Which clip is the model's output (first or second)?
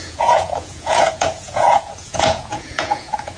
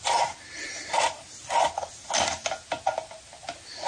first